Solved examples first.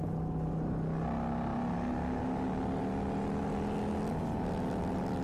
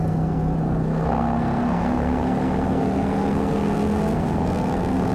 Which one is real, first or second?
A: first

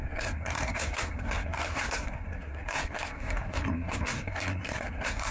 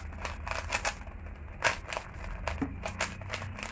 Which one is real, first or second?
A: second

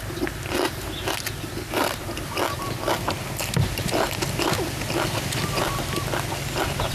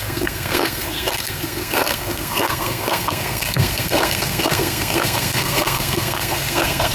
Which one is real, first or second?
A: first